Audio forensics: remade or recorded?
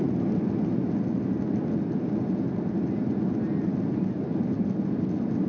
recorded